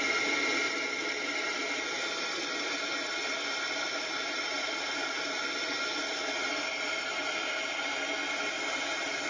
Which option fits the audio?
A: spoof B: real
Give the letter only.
B